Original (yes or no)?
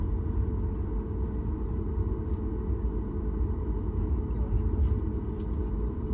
yes